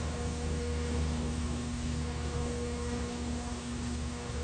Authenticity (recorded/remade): remade